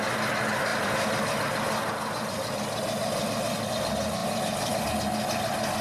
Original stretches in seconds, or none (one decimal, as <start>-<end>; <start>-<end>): 0.0-0.7; 3.7-4.2; 4.8-5.8